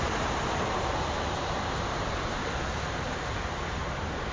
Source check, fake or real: fake